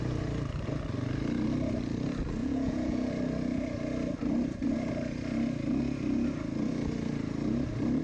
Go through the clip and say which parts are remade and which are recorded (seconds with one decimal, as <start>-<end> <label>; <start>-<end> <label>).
0.0-2.4 recorded; 2.4-3.1 remade; 3.1-8.0 recorded